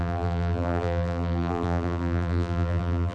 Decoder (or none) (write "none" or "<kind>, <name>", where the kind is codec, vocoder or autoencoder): vocoder, BigVGAN v2